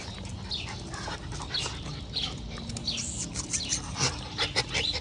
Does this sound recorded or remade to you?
recorded